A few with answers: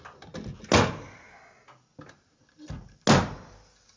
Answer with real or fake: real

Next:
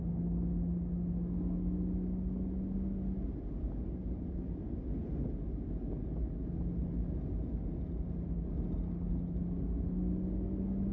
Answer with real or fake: real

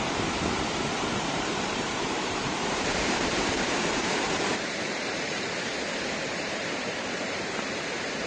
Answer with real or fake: fake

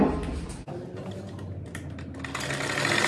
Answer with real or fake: real